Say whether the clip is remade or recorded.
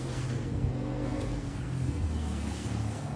remade